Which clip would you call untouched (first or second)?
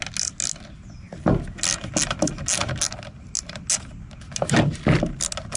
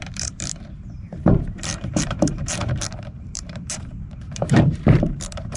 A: first